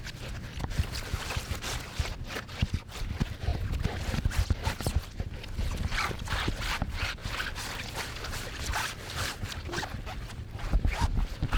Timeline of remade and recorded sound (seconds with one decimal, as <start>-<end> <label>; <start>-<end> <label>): 0.0-3.5 remade; 3.5-4.7 recorded; 4.7-7.2 remade; 7.2-7.8 recorded; 7.8-11.6 remade